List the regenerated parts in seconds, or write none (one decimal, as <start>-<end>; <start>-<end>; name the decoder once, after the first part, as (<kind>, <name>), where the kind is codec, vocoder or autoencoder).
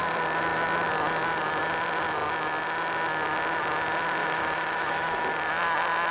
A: 4.2-5.2 (autoencoder, DAC-VAE)